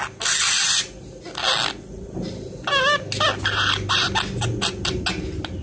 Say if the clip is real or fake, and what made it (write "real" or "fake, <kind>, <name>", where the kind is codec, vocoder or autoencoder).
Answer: real